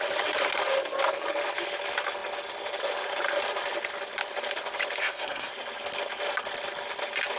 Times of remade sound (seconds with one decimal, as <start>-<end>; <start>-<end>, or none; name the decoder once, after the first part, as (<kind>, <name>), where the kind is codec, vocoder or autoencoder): 5.0-5.5 (codec, SNAC)